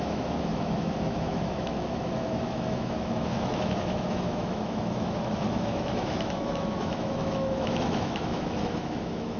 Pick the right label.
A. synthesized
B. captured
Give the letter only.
A